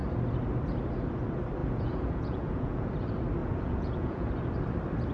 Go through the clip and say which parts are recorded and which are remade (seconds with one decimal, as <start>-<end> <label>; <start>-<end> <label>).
0.0-1.6 recorded; 1.6-2.9 remade; 2.9-3.4 recorded; 3.4-4.3 remade; 4.3-5.1 recorded

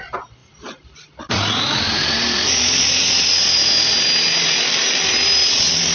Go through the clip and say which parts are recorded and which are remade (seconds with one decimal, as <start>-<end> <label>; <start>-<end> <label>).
0.0-0.4 recorded; 0.4-3.9 remade; 3.9-5.9 recorded

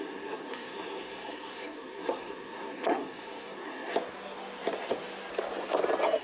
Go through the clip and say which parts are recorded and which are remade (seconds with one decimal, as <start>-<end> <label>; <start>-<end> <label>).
0.0-3.9 remade; 3.9-6.2 recorded

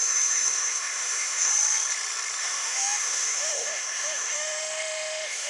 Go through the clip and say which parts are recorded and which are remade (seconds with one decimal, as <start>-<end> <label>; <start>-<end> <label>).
0.0-1.5 remade; 1.5-2.4 recorded; 2.4-5.5 remade

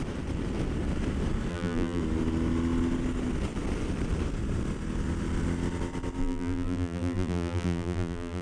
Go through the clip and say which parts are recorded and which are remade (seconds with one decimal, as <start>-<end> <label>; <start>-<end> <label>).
0.0-1.5 recorded; 1.5-2.0 remade; 2.0-6.2 recorded; 6.2-8.4 remade

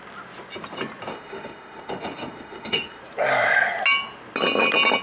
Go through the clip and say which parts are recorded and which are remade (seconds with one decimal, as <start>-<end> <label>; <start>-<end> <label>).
0.0-1.1 recorded; 1.1-3.0 remade; 3.0-5.0 recorded

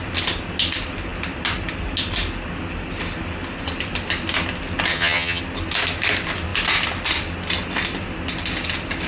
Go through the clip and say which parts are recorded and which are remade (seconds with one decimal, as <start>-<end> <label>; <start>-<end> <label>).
0.0-4.9 recorded; 4.9-5.4 remade; 5.4-9.1 recorded

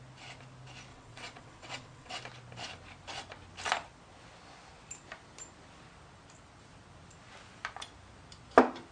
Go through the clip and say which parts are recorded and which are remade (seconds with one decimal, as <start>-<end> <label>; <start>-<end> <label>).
0.0-0.9 recorded; 0.9-2.2 remade; 2.2-8.9 recorded